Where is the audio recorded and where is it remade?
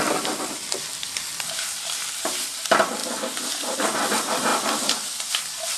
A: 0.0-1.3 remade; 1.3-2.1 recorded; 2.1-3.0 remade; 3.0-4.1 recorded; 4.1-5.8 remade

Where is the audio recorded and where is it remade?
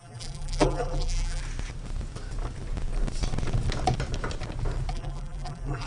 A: 0.0-1.4 remade; 1.4-4.9 recorded; 4.9-5.9 remade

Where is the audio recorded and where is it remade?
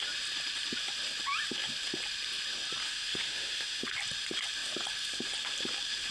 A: 0.0-2.8 recorded; 2.8-3.8 remade; 3.8-6.1 recorded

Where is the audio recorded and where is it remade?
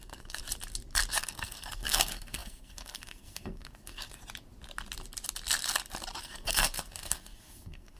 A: 0.0-0.4 remade; 0.4-1.1 recorded; 1.1-4.2 remade; 4.2-6.2 recorded; 6.2-8.0 remade